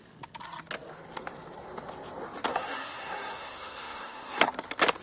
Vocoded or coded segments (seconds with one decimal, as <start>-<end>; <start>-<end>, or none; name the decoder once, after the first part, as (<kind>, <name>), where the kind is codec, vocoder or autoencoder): 2.5-4.5 (codec, SNAC)

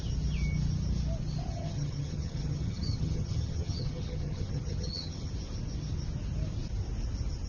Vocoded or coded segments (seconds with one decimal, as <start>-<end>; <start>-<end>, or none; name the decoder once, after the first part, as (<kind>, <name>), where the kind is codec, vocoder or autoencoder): 1.5-5.3 (vocoder, HiFi-GAN)

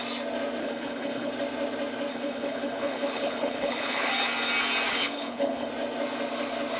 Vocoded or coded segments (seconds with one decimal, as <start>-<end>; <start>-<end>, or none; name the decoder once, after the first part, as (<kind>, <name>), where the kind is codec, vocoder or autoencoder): 0.6-1.3 (codec, HILCodec); 2.1-4.1; 4.9-5.7